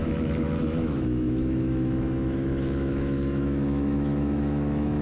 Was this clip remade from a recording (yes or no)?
yes